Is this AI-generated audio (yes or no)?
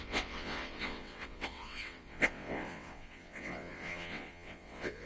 yes